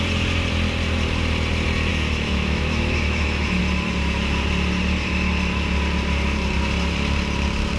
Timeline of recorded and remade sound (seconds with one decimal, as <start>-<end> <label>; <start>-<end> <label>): 0.0-1.9 recorded; 1.9-3.6 remade; 3.6-7.8 recorded